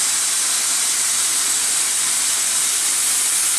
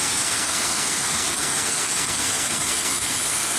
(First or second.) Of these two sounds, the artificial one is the second